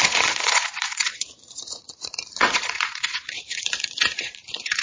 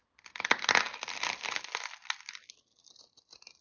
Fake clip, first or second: first